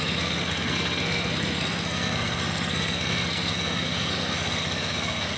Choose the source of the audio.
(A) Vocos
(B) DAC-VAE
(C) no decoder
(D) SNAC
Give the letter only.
D